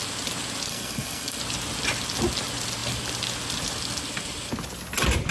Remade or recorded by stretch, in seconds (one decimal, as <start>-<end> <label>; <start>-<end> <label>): 0.0-0.7 recorded; 0.7-1.4 remade; 1.4-5.3 recorded